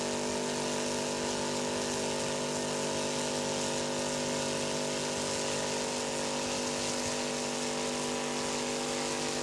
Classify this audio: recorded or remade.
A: recorded